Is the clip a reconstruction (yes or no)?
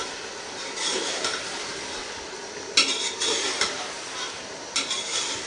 no